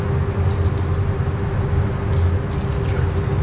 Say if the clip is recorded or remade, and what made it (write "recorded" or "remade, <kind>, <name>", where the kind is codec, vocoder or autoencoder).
recorded